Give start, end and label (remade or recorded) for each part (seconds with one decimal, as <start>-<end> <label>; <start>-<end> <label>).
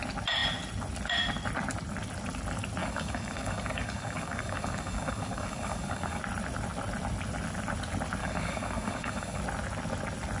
0.0-2.8 recorded; 2.8-6.2 remade; 6.2-8.2 recorded; 8.2-9.4 remade; 9.4-10.4 recorded